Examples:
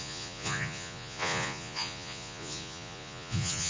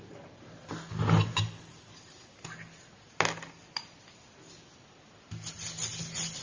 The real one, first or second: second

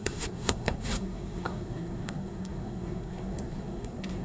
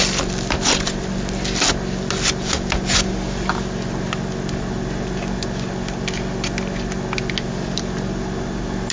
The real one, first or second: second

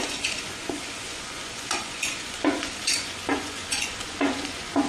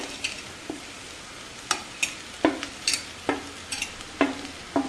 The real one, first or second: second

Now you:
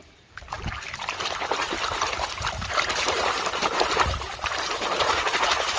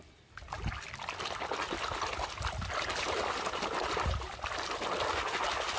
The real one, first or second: second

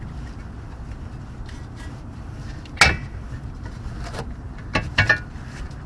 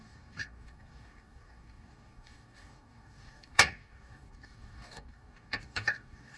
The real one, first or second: first